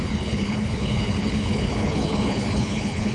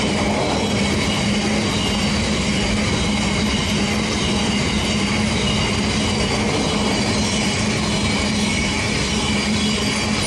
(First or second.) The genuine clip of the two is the second